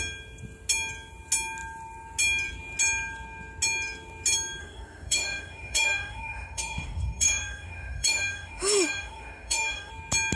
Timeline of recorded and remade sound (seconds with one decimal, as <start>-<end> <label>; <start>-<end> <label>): 0.0-4.6 recorded; 4.6-9.9 remade; 9.9-10.4 recorded